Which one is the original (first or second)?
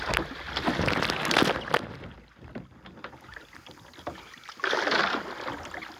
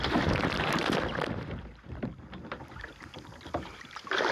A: first